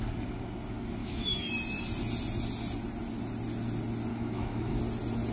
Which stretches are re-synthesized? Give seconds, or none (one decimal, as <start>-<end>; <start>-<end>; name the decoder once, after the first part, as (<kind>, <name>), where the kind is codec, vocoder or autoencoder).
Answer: 1.0-1.5 (autoencoder, DAC-VAE); 4.1-4.8